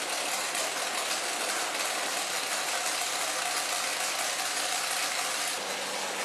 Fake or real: real